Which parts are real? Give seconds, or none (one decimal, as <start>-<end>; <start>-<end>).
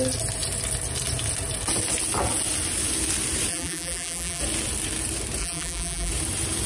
0.0-3.5; 4.4-5.4; 6.1-6.7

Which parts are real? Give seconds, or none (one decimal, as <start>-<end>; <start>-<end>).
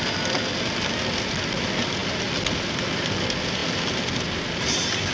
0.0-5.1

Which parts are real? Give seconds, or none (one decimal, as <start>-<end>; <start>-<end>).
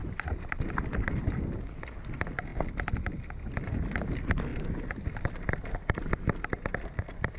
1.5-7.4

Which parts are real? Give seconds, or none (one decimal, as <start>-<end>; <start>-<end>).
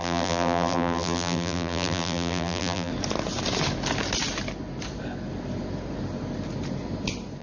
2.9-7.4